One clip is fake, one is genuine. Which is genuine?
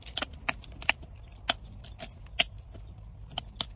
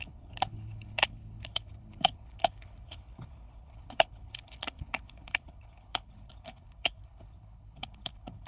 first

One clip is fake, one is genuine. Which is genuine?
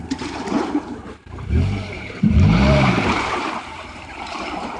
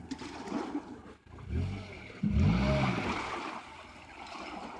second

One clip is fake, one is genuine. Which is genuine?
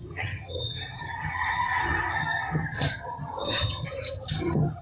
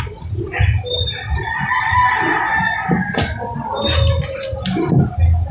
second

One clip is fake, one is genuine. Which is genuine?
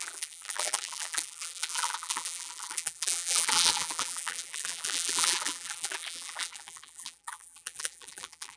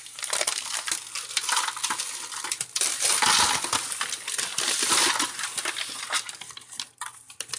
second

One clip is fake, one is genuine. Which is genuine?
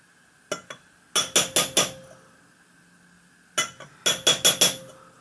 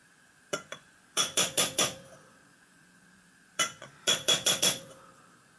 first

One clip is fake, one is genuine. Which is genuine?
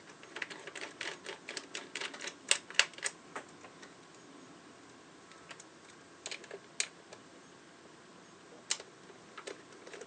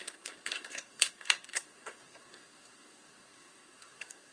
first